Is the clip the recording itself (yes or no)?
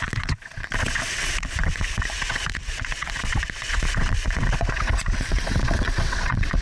no